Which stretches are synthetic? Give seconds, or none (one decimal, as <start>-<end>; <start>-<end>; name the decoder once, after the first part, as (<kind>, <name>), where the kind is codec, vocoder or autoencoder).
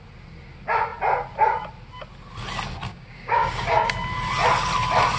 2.9-3.9 (codec, DAC)